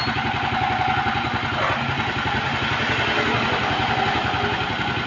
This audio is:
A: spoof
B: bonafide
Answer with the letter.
B